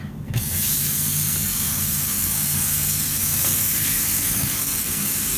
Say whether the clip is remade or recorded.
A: remade